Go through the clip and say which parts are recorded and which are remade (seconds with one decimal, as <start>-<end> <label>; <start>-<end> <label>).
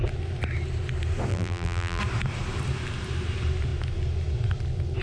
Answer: 0.0-1.3 recorded; 1.3-2.0 remade; 2.0-5.0 recorded